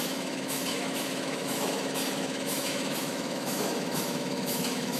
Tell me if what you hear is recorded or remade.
remade